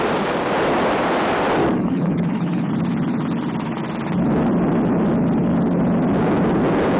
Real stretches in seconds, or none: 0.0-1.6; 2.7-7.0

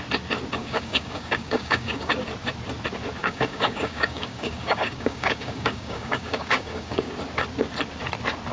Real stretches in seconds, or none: 0.0-0.6; 2.1-3.2; 7.1-8.5

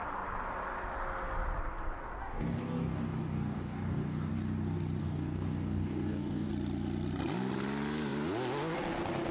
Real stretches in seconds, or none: 0.0-2.2; 4.3-5.0; 6.5-9.3